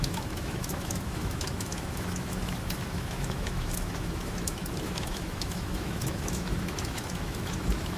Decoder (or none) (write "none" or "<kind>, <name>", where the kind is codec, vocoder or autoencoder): autoencoder, DAC-VAE